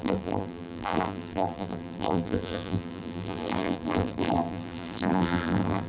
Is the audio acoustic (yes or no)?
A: no